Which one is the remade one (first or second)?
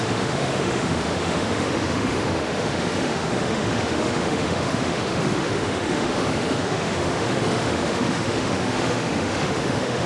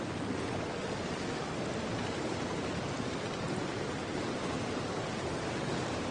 first